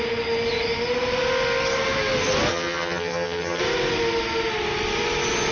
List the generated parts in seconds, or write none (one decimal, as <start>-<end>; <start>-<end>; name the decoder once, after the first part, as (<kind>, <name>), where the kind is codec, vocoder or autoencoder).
2.5-3.6 (vocoder, HiFi-GAN)